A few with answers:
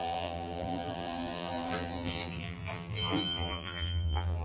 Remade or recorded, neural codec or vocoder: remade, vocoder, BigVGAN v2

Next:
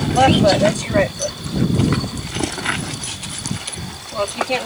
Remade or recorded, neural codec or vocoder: recorded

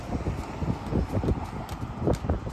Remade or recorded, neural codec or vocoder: recorded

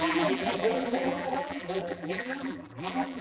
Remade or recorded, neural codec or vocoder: remade, vocoder, BigVGAN v2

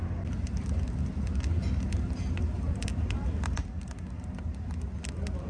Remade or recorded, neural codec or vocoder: recorded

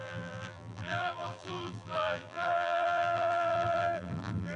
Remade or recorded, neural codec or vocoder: remade, vocoder, BigVGAN v2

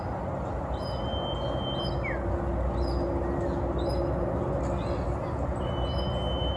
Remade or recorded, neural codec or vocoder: recorded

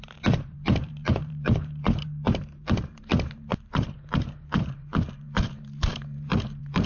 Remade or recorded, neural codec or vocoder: remade, vocoder, BigVGAN v2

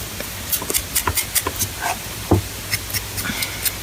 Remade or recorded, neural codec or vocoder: recorded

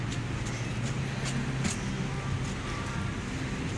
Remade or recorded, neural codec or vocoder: recorded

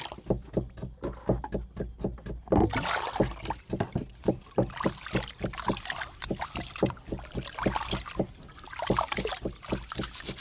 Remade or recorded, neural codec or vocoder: recorded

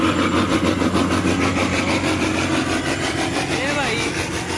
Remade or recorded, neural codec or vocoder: recorded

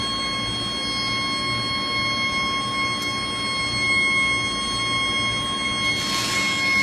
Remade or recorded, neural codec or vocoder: recorded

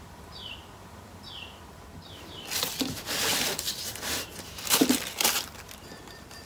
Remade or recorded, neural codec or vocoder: remade, vocoder, BigVGAN v2